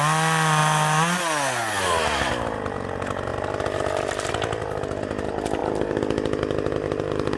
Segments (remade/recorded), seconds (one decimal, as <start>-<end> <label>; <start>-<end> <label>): 0.0-7.4 recorded